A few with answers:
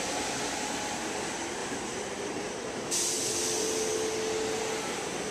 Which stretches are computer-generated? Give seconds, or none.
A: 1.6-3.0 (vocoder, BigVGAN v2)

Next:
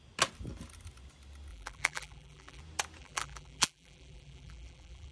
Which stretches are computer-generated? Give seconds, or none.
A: 1.5-2.6 (vocoder, BigVGAN v2); 3.0-5.1

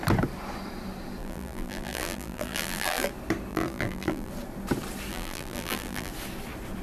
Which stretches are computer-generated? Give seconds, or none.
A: 1.2-3.1 (vocoder, BigVGAN v2); 3.5-4.3; 5.1-6.1